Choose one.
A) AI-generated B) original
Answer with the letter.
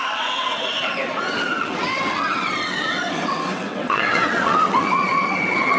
A